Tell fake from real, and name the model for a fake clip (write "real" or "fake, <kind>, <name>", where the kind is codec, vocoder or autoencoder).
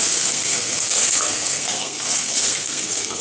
fake, codec, SNAC